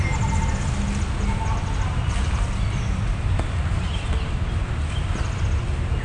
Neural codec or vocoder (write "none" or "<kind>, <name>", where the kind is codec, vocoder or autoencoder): none